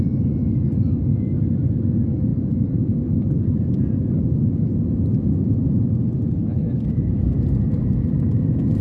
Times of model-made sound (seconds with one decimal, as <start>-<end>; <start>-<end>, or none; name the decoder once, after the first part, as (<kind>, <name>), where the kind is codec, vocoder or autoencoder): none